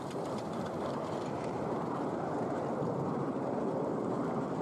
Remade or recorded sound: remade